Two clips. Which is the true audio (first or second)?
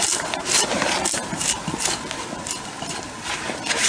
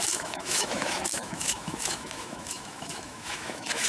first